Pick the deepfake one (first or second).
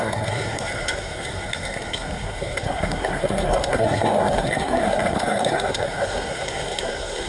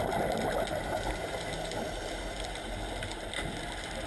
first